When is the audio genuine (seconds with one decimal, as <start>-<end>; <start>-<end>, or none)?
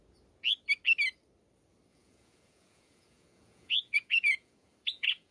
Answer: 0.0-1.9